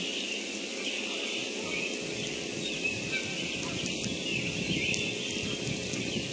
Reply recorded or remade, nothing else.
recorded